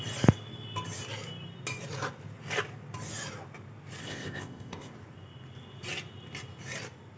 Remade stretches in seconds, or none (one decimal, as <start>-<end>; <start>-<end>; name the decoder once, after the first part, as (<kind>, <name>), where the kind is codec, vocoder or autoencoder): 4.0-4.9 (codec, ZipCodec)